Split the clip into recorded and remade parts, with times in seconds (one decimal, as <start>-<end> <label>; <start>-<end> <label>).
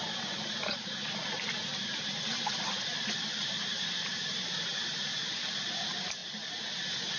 0.0-6.2 remade; 6.2-7.2 recorded